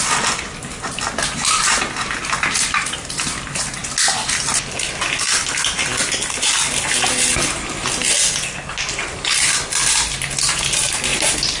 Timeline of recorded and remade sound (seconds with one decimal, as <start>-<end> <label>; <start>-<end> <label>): 0.0-11.6 recorded